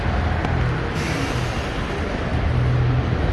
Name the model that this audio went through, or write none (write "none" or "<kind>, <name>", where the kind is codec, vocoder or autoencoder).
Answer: none